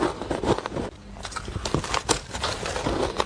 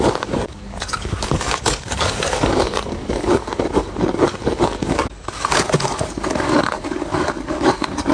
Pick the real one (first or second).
first